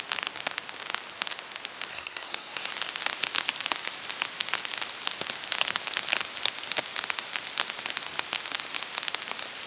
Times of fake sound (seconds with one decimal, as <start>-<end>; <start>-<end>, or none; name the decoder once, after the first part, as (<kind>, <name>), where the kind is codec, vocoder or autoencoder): 1.9-2.7 (codec, SNAC)